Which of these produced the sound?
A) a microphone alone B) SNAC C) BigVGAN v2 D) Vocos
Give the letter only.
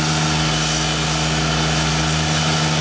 A